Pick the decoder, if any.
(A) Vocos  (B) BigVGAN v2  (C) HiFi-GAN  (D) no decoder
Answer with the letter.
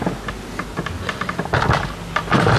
D